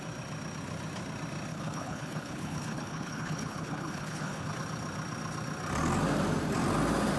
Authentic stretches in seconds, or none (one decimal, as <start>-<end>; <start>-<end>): 0.0-1.5; 4.5-7.2